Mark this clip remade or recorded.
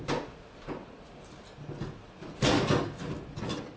recorded